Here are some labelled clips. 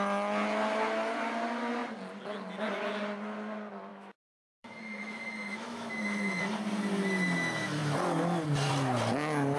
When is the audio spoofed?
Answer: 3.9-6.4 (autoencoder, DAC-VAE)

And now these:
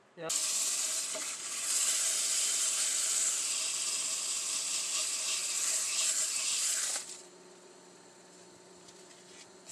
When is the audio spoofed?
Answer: none

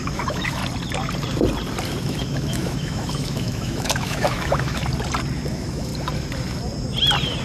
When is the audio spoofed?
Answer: 0.0-0.6 (autoencoder, DAC-VAE); 2.0-4.8; 5.5-5.9

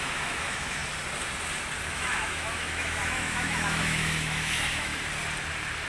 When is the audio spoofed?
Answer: 0.0-0.8 (autoencoder, DAC-VAE); 1.9-4.9

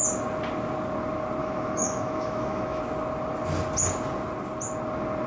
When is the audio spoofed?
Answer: 1.4-2.8 (autoencoder, DAC-VAE)

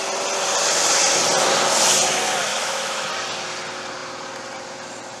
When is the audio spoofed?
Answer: 2.5-3.1 (autoencoder, DAC-VAE)

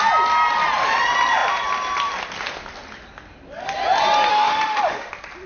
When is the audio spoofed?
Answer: 4.3-5.1 (autoencoder, DAC-VAE)

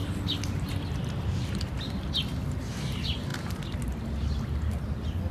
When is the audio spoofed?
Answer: none